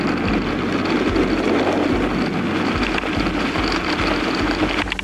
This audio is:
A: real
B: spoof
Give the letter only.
A